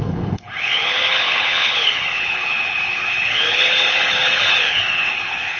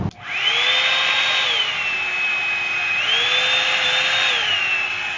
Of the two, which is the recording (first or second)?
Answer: second